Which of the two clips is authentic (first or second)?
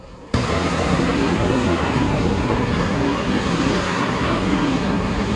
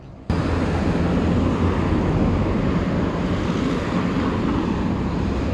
second